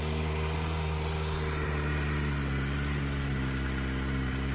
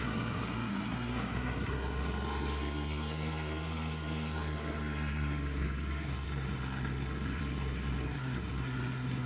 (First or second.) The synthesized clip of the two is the second